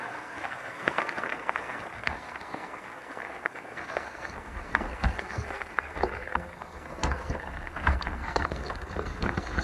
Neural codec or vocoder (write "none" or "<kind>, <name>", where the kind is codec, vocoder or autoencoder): codec, SNAC